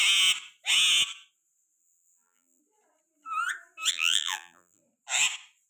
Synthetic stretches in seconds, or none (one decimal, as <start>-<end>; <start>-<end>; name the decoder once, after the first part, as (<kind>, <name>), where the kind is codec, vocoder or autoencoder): 1.8-2.6 (vocoder, BigVGAN v2); 3.9-4.8